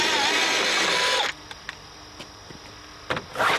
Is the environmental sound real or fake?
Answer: real